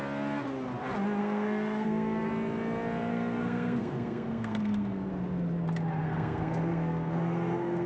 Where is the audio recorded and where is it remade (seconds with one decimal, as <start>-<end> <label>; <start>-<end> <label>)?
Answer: 0.0-1.2 recorded; 1.2-2.3 remade; 2.3-3.1 recorded; 3.1-5.1 remade; 5.1-6.0 recorded; 6.0-7.9 remade